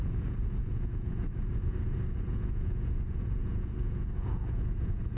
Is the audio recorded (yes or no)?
no